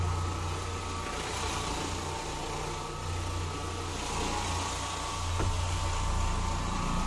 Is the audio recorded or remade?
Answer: recorded